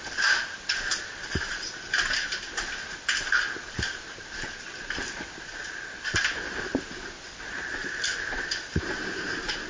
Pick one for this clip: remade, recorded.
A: recorded